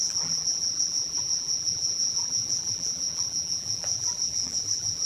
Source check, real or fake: fake